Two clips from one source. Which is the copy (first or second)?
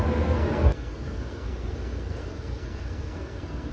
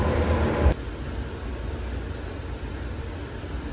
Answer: first